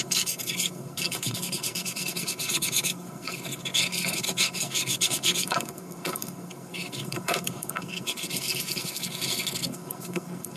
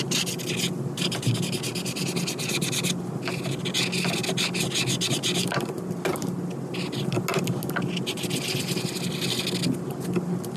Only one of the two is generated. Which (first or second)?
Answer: first